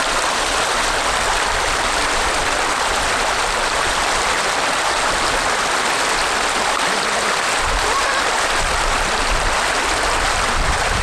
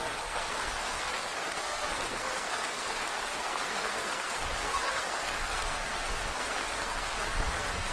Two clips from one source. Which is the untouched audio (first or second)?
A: first